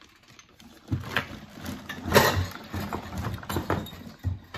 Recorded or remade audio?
recorded